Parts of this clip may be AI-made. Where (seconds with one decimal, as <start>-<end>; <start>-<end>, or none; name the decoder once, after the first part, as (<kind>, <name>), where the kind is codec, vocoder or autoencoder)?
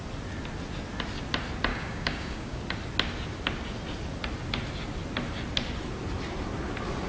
1.7-2.6 (codec, DAC)